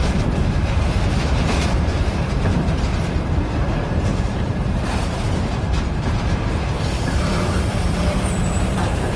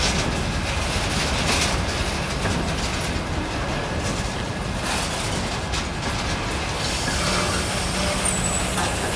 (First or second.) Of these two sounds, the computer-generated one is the first